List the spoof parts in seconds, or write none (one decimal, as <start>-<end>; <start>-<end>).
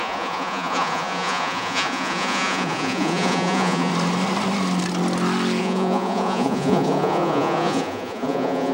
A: 0.0-3.9; 5.6-8.7